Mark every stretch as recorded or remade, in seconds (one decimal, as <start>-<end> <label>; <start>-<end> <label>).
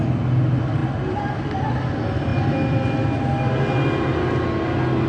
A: 0.0-5.1 recorded